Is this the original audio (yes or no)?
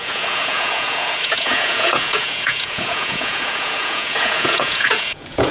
no